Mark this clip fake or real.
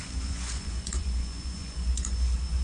fake